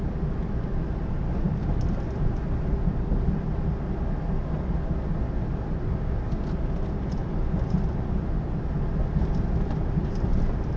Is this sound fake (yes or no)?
no